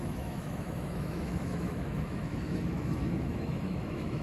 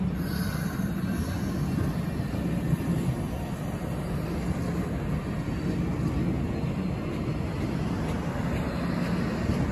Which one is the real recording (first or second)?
second